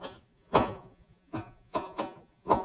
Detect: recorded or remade remade